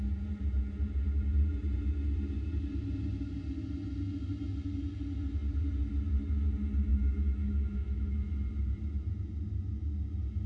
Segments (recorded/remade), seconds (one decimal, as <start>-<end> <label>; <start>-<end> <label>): 0.0-6.9 recorded; 6.9-8.3 remade; 8.3-10.5 recorded